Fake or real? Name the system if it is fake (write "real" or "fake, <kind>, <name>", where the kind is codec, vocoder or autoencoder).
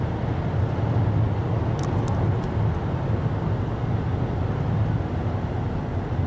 real